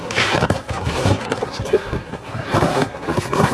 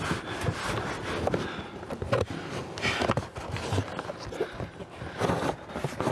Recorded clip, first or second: second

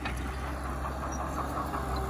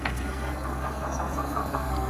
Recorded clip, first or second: first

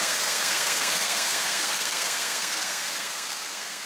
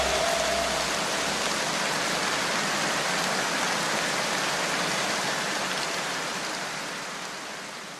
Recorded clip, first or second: second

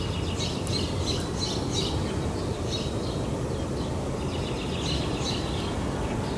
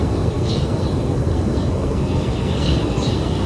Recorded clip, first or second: first